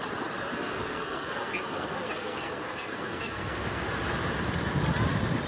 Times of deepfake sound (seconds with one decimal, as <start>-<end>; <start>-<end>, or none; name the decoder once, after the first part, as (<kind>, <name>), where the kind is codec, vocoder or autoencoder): 0.5-3.8 (codec, SNAC)